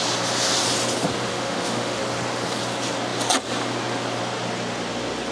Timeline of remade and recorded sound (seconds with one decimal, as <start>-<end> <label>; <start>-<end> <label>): 0.0-1.3 recorded; 1.3-2.0 remade; 2.0-5.3 recorded